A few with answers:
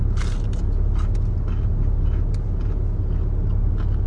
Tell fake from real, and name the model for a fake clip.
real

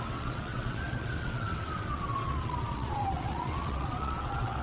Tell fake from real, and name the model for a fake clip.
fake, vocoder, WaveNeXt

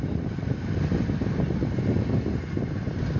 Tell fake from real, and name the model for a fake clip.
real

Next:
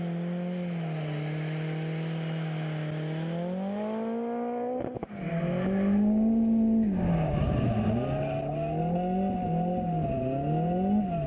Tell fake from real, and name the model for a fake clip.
real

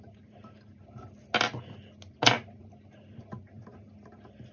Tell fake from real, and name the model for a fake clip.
real